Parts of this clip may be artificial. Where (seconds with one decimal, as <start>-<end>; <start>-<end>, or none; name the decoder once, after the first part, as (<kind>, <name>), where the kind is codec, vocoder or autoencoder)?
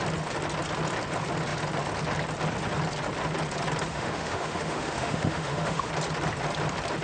3.9-5.9 (autoencoder, DAC-VAE)